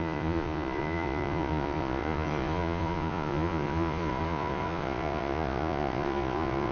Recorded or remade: remade